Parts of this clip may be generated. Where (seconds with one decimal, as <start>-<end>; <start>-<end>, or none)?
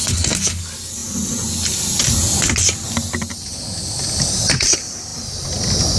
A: 0.0-0.6